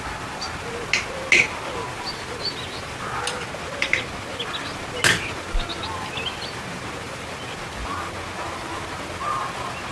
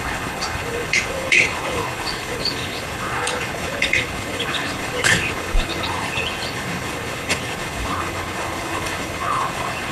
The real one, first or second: first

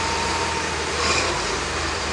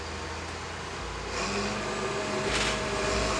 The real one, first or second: second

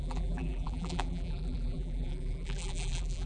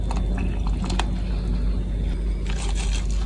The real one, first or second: second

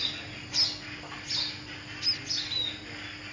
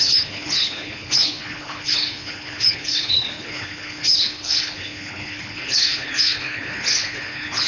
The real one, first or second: first